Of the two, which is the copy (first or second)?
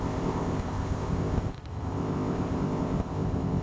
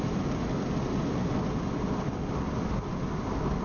first